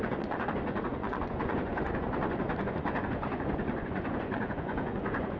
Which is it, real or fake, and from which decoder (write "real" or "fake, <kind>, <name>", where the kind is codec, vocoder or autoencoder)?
fake, vocoder, Vocos